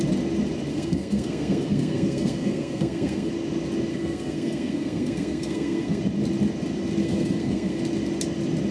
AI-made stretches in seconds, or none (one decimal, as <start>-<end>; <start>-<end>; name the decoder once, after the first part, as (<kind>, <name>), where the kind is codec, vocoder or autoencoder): 0.7-3.3 (codec, SNAC); 3.9-6.0; 7.0-7.8